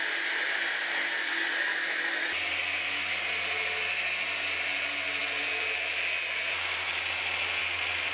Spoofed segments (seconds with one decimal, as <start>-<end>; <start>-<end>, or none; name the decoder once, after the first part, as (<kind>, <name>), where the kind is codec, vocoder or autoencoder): none